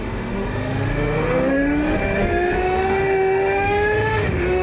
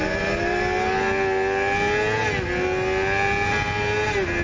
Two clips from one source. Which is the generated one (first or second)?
first